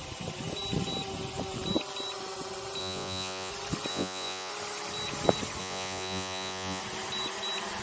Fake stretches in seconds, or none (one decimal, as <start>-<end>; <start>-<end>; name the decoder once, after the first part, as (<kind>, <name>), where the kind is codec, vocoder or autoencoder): 2.8-3.5 (vocoder, Vocos); 3.9-4.5; 5.6-6.8